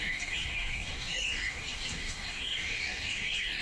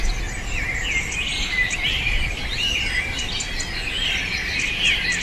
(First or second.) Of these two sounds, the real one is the second